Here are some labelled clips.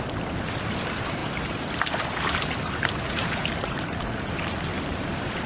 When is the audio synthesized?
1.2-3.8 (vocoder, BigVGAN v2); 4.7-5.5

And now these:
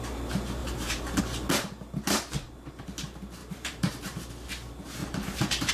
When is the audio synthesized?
0.6-1.2 (vocoder, BigVGAN v2); 3.4-4.3; 5.0-5.7

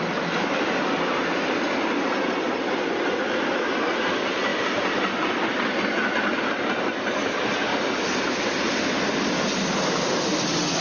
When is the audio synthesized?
none